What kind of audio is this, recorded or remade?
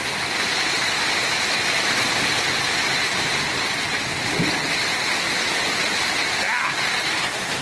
recorded